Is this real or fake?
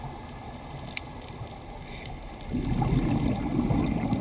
real